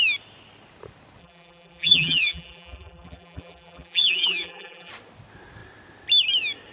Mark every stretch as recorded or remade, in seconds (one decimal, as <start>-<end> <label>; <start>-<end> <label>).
0.0-1.2 recorded; 1.2-4.9 remade; 4.9-6.7 recorded